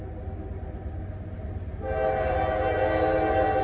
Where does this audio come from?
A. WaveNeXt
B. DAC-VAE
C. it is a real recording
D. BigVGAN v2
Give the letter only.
C